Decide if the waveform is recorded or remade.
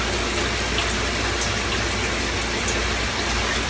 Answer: recorded